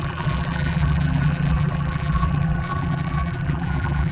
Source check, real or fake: fake